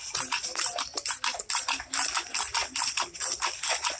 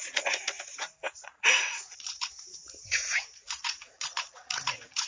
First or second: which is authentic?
first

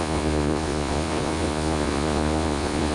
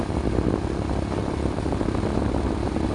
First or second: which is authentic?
second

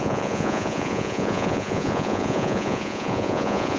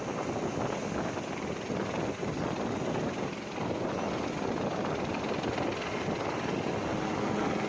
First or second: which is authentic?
second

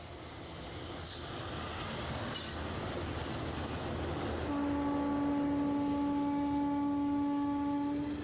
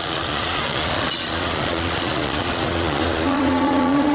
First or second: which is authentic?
first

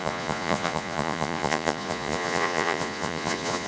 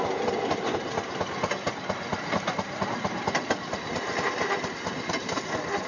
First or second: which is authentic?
second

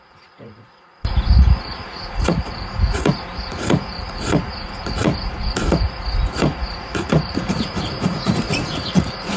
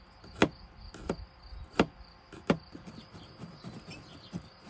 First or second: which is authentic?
second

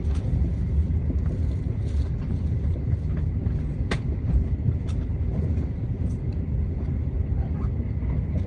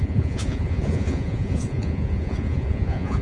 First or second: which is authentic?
first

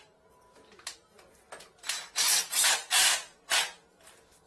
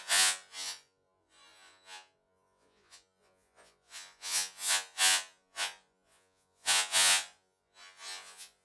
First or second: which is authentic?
first